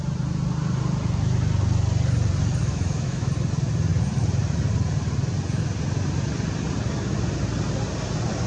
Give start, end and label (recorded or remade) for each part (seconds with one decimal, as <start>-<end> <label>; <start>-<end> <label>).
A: 0.0-2.6 recorded; 2.6-3.3 remade; 3.3-8.5 recorded